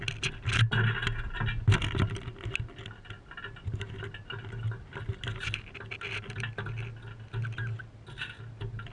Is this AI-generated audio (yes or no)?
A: no